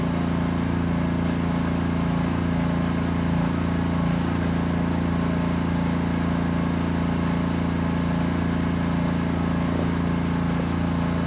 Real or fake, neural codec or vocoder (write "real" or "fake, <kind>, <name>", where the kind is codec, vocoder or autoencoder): real